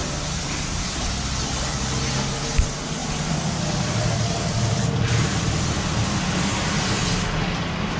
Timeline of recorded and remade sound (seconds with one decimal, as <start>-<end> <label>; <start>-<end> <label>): 0.0-3.0 recorded; 3.0-6.2 remade; 6.2-8.0 recorded